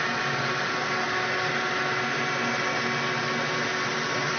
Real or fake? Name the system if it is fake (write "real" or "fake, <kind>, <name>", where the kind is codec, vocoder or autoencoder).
real